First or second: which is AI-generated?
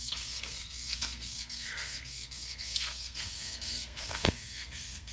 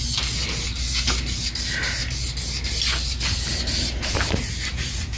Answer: first